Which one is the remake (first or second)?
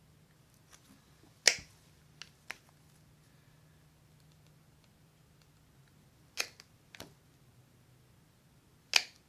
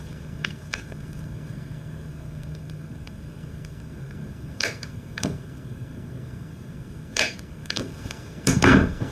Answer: second